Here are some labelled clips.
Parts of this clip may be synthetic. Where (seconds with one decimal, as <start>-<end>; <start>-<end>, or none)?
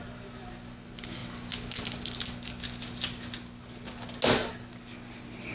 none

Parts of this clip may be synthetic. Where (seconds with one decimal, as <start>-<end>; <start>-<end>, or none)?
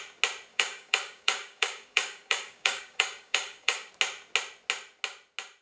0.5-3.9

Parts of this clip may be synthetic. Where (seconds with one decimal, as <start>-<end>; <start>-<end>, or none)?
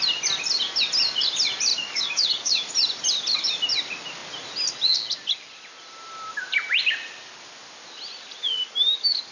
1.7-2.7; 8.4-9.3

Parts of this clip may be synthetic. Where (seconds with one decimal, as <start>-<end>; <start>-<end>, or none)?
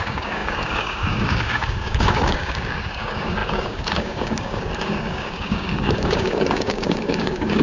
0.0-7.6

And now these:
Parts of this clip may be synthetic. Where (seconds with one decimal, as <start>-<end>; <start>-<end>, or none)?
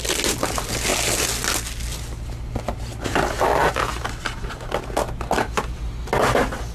none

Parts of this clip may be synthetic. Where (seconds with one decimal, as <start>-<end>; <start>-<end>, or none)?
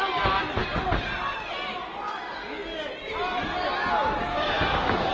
4.3-5.1